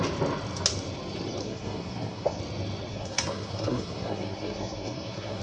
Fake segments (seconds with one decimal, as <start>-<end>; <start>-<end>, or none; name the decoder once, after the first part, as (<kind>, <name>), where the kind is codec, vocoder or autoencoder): 1.4-2.4 (codec, SNAC); 2.9-5.4